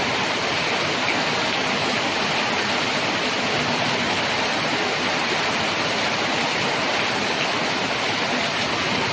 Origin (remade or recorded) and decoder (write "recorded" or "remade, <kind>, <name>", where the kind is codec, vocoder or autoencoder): remade, vocoder, BigVGAN v2